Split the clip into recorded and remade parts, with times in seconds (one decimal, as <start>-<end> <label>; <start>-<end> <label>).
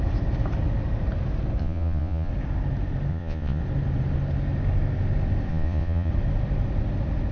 0.0-1.6 recorded; 1.6-2.3 remade; 2.3-3.1 recorded; 3.1-3.6 remade; 3.6-5.5 recorded; 5.5-6.1 remade; 6.1-7.3 recorded